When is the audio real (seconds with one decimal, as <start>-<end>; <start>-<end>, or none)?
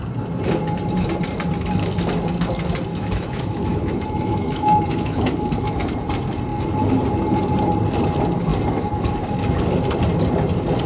0.0-2.9; 5.5-10.9